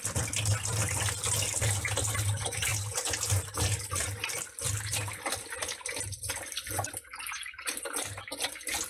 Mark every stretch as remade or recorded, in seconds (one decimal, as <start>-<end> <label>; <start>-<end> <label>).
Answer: 0.0-8.9 recorded